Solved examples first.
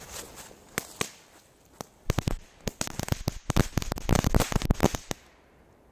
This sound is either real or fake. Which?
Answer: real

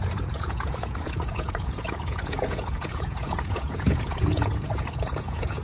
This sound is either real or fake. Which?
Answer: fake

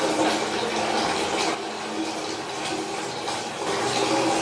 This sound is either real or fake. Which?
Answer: real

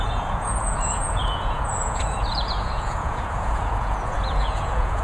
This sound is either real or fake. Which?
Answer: fake